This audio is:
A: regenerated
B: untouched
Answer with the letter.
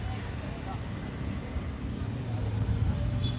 B